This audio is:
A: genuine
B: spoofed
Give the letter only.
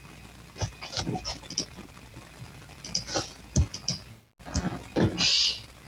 A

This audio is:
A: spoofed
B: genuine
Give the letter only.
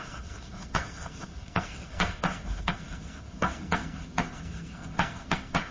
A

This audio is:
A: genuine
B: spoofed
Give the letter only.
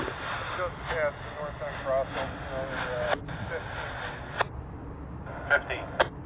A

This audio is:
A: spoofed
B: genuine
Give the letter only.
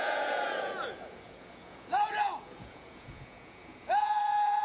A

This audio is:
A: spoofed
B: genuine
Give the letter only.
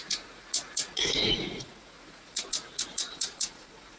A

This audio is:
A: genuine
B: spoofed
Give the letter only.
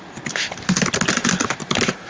A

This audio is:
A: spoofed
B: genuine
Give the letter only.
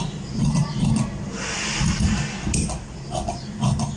B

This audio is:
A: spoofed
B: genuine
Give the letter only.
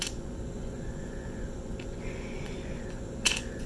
A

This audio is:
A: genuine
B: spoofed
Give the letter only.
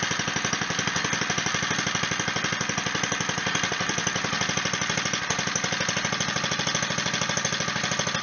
A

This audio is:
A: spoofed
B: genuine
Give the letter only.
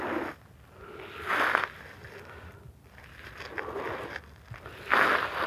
B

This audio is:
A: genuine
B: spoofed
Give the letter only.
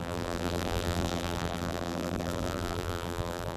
B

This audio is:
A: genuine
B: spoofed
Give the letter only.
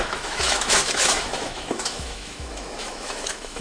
B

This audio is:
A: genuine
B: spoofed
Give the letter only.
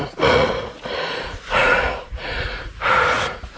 B